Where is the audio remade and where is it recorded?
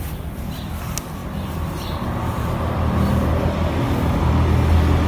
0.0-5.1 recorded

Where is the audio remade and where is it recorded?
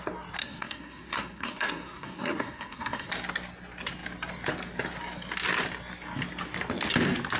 0.0-0.4 recorded; 0.4-3.1 remade; 3.1-7.4 recorded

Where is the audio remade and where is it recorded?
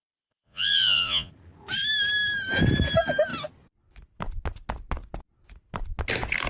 0.0-1.3 remade; 1.3-6.5 recorded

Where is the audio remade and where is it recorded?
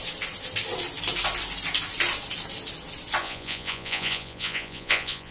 0.0-3.2 recorded; 3.2-5.3 remade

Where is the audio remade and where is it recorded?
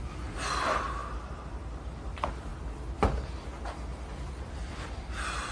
0.0-2.5 remade; 2.5-4.4 recorded; 4.4-5.5 remade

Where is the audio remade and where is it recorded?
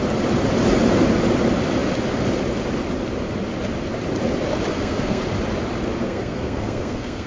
0.0-4.7 recorded; 4.7-5.2 remade; 5.2-6.0 recorded; 6.0-7.3 remade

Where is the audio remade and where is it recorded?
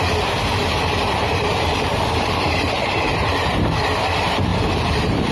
0.0-0.5 recorded; 0.5-3.7 remade; 3.7-4.5 recorded; 4.5-5.3 remade